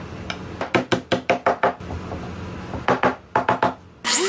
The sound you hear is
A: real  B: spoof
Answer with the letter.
A